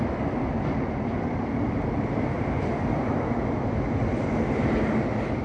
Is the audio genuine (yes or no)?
no